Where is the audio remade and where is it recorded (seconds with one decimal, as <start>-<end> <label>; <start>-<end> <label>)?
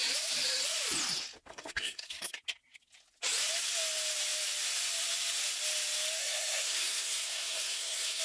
0.0-1.5 recorded; 1.5-2.3 remade; 2.3-6.2 recorded; 6.2-8.2 remade